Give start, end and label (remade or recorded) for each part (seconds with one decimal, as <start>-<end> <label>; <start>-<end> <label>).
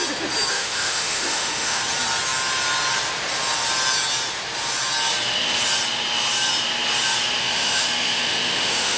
0.0-0.5 recorded; 0.5-1.8 remade; 1.8-7.4 recorded; 7.4-9.0 remade